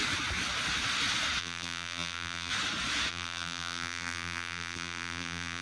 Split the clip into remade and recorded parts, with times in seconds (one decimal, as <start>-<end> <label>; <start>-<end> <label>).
0.0-1.4 recorded; 1.4-2.5 remade; 2.5-3.1 recorded; 3.1-5.6 remade